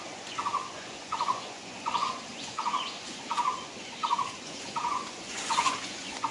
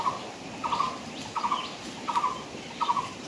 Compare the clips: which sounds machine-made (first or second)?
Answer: first